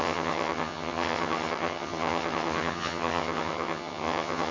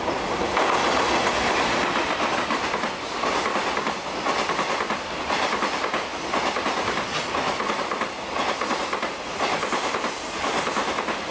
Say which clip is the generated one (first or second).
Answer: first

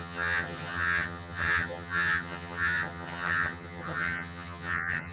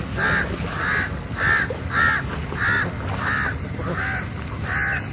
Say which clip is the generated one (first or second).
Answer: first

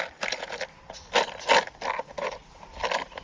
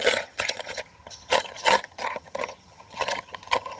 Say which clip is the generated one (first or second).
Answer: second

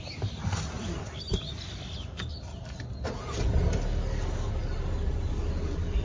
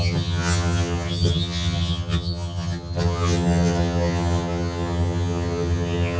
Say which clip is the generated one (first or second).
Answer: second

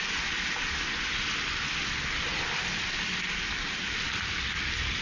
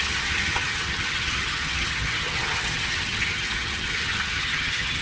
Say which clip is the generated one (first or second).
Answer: second